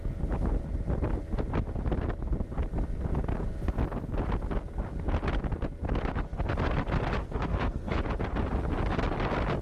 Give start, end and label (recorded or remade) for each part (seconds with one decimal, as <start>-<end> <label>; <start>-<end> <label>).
0.0-7.2 recorded; 7.2-8.0 remade; 8.0-9.6 recorded